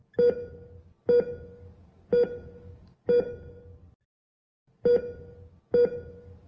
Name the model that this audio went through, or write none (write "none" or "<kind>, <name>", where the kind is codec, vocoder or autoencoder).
none